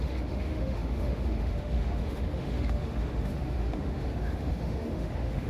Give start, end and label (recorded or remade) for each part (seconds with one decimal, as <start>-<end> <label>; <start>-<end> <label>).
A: 0.0-5.5 remade